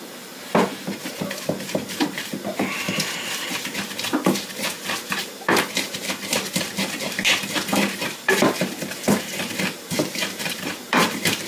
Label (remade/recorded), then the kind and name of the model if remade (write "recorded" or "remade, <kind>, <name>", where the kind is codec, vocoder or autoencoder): remade, vocoder, BigVGAN v2